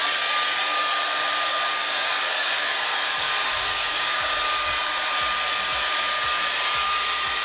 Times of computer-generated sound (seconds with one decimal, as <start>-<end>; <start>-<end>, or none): 1.5-4.3